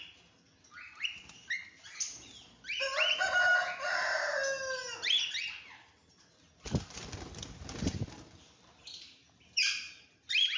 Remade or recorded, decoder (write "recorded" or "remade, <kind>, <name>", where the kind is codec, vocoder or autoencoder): recorded